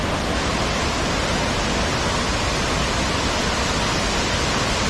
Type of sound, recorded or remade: recorded